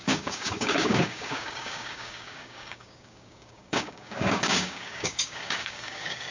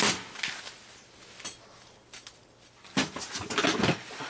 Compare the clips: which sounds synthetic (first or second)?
first